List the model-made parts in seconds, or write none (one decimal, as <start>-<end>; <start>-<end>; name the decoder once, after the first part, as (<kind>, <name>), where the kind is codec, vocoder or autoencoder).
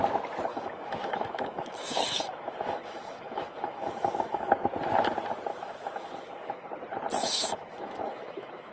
0.5-4.5 (autoencoder, DAC-VAE); 5.5-6.7; 7.2-8.7